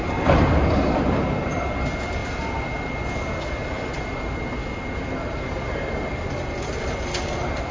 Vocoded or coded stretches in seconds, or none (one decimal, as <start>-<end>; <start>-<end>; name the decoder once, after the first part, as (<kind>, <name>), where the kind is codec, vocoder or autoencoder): none